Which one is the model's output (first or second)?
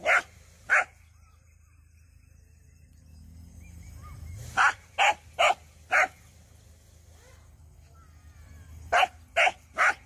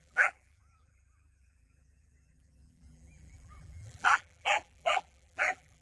second